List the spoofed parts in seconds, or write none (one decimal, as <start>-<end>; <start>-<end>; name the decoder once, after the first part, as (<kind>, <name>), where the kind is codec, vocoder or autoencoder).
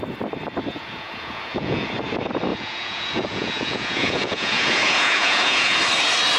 0.7-1.9 (vocoder, Vocos); 2.5-5.8